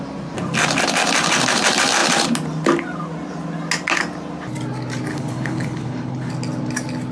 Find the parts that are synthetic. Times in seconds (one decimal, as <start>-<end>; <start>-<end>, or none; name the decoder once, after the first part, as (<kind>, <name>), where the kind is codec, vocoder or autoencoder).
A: 5.1-6.3 (codec, HILCodec)